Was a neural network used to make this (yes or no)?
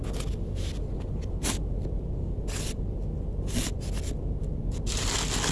no